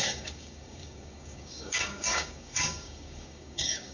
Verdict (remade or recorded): remade